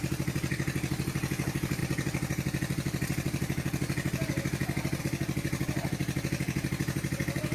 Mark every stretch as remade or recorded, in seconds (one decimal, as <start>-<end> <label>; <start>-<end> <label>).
0.0-7.5 recorded